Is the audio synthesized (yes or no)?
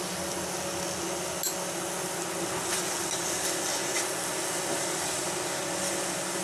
no